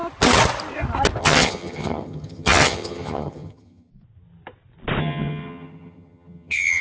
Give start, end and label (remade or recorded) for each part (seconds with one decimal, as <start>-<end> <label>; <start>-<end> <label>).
0.0-1.2 recorded; 1.2-3.9 remade; 3.9-5.0 recorded; 5.0-6.8 remade